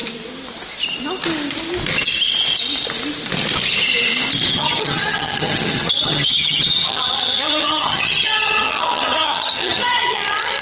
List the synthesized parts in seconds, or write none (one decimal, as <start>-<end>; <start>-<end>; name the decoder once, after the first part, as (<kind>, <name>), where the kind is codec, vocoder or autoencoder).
4.5-10.6 (vocoder, HiFi-GAN)